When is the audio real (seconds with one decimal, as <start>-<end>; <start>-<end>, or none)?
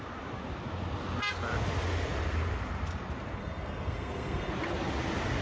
0.0-3.4; 4.5-5.4